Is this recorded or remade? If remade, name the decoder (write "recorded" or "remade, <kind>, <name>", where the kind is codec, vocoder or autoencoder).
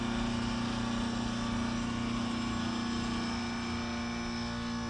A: recorded